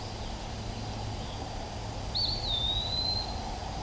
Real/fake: real